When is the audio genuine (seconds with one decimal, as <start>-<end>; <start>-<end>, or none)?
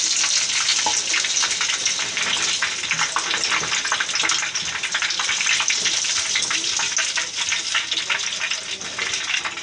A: 0.0-9.6